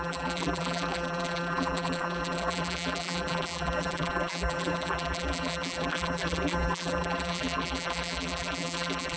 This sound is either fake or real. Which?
fake